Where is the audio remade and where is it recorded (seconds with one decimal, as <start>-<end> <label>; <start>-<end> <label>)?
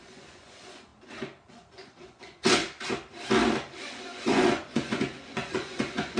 0.0-0.9 remade; 0.9-1.5 recorded; 1.5-2.6 remade; 2.6-3.8 recorded; 3.8-6.2 remade